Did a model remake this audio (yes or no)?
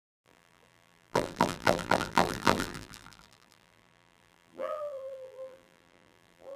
yes